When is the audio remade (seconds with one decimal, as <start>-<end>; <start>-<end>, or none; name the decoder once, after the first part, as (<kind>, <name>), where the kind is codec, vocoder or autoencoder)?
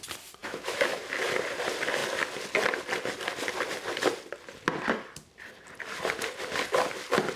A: 0.4-1.0 (autoencoder, DAC-VAE)